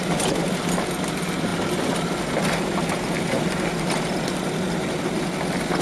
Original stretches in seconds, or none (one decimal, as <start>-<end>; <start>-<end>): 0.0-5.8